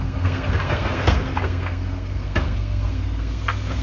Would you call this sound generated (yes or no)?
yes